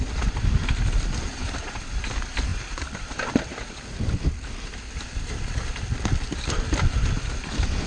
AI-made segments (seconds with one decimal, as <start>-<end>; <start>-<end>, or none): none